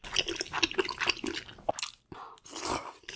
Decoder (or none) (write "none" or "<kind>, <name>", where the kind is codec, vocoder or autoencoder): none